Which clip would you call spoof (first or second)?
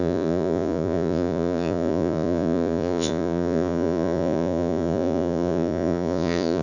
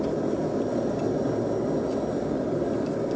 first